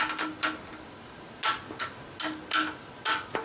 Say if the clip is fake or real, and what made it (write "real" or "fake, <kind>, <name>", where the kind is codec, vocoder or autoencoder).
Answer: real